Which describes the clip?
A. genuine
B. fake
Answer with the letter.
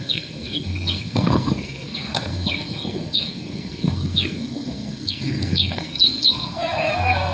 B